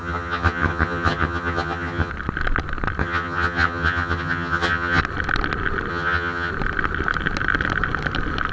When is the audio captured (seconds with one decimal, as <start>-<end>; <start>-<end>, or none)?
2.1-3.0; 5.0-5.9; 6.5-8.5